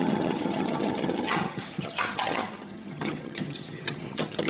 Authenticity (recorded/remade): remade